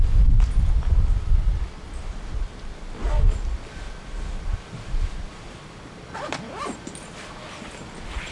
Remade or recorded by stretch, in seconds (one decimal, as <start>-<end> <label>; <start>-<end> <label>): 0.0-8.3 recorded